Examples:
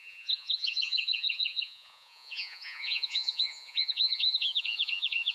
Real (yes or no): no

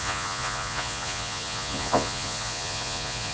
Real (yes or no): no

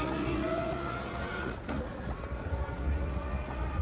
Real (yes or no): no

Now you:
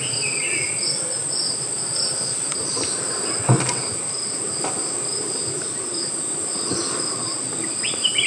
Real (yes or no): yes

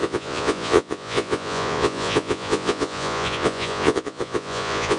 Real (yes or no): no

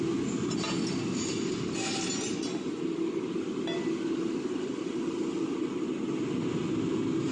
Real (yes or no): yes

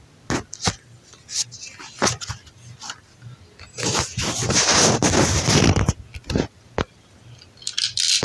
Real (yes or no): yes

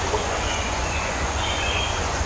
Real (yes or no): no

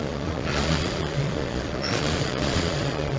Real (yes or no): no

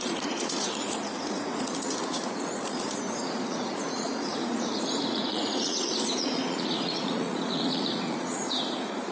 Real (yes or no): no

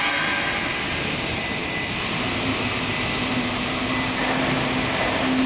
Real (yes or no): yes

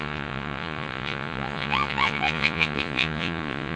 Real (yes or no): no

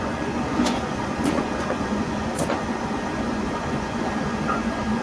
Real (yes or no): no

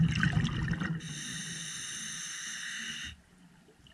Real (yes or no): yes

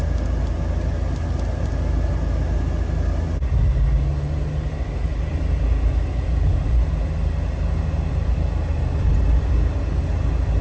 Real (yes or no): yes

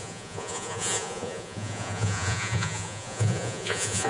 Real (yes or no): no